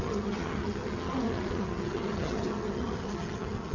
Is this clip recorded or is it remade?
remade